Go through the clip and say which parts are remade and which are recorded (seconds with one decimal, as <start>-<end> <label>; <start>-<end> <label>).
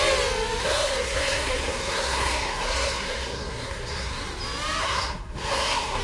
0.0-0.6 recorded; 0.6-4.2 remade; 4.2-4.8 recorded; 4.8-6.0 remade